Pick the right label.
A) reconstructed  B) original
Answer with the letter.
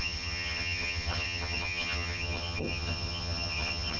A